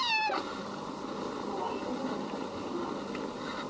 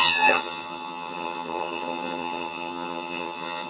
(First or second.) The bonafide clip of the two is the first